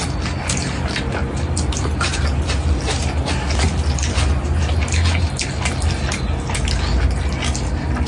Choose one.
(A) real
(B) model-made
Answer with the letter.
A